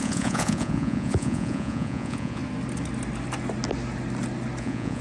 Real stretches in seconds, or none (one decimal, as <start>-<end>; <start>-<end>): 2.4-4.6

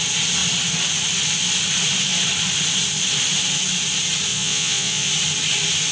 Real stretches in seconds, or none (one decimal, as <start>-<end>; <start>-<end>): 0.0-4.3; 5.1-5.9

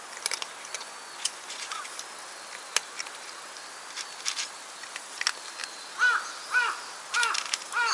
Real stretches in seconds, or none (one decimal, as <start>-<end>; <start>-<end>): 0.0-0.8; 1.9-7.9

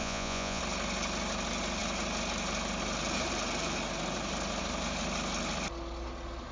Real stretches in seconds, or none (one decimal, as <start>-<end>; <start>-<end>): 0.6-6.5

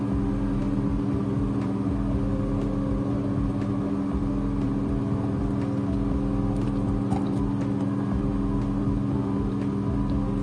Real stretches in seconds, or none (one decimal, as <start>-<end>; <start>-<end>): 0.0-10.4

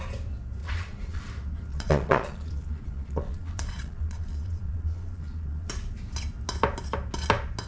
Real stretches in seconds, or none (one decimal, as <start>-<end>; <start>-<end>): 0.0-0.6; 1.2-1.7; 5.7-7.7